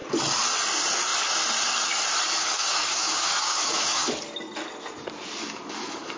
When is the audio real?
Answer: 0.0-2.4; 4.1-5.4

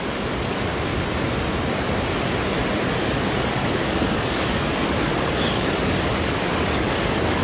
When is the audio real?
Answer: 0.7-3.1

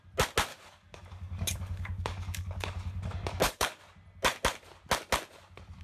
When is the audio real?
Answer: 0.0-0.5; 3.8-5.8

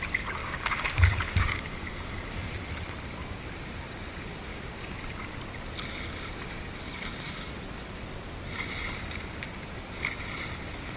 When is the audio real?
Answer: 0.0-0.4; 2.1-4.5; 5.0-11.0

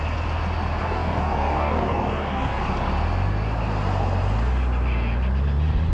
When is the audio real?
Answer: 0.0-0.8; 2.6-5.9

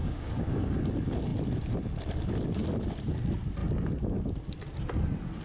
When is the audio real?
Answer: 0.7-5.4

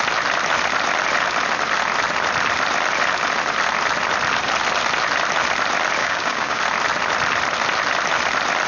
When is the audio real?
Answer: 0.0-6.0; 6.6-8.7

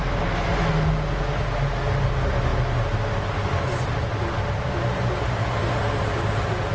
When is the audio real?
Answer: 0.0-6.7